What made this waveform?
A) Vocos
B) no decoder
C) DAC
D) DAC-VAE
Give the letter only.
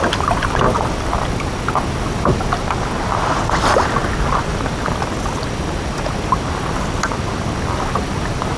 B